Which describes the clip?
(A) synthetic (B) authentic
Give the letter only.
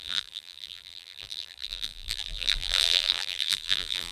A